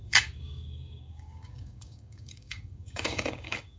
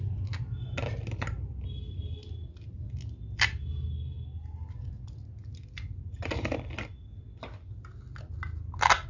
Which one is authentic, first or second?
second